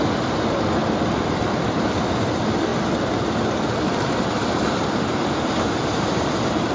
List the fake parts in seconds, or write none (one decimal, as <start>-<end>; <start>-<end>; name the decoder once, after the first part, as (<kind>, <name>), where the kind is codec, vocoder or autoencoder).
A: 0.0-0.8 (vocoder, BigVGAN v2); 1.4-2.7; 4.5-6.7